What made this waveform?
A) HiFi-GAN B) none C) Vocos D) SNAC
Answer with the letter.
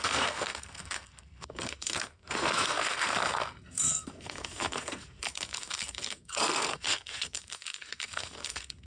D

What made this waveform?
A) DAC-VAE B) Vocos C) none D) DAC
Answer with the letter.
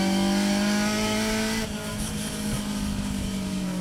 D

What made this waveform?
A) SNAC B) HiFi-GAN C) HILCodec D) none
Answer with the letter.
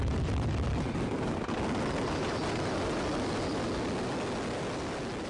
D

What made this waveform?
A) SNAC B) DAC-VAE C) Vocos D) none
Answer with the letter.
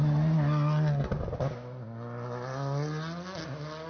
D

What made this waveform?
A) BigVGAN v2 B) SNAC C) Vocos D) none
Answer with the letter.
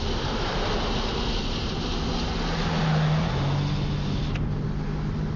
D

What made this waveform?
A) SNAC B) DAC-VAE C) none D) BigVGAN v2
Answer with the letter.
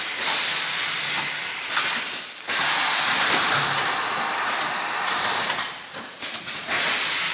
C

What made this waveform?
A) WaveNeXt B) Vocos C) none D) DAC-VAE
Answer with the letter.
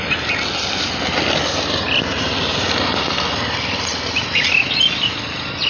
C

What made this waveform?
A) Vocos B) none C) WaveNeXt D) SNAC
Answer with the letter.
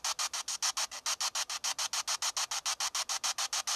B